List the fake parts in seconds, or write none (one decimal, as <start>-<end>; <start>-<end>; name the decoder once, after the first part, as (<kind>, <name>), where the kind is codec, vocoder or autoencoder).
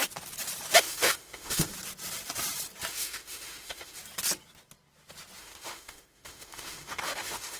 0.8-1.7 (autoencoder, DAC-VAE); 2.9-4.0; 5.4-7.6